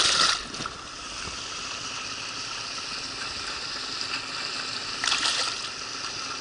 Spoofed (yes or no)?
no